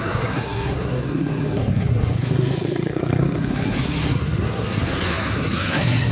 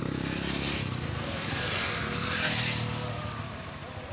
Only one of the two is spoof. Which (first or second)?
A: first